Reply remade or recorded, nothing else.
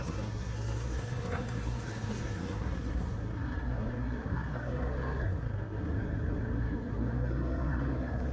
remade